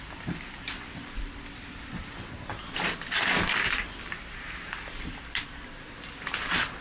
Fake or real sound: fake